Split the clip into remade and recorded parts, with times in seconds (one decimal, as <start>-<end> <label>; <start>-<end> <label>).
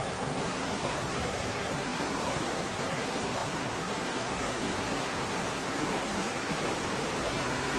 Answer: 0.0-6.7 remade; 6.7-7.2 recorded; 7.2-7.8 remade